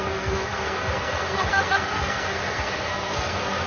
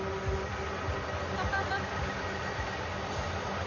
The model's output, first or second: first